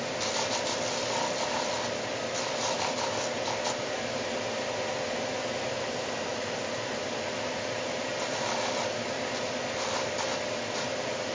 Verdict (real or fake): real